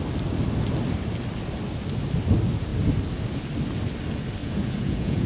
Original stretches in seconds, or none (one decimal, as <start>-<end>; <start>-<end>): 0.0-4.4